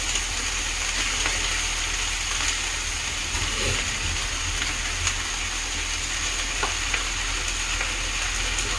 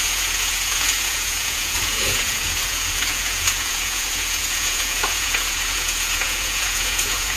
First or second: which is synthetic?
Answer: second